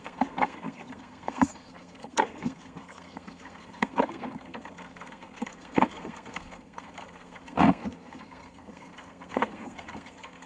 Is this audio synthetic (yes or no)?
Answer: yes